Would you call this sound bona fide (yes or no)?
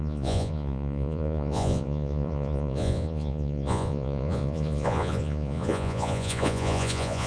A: no